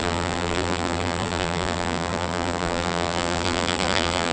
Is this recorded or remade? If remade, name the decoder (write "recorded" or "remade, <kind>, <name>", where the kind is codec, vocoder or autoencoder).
remade, vocoder, BigVGAN v2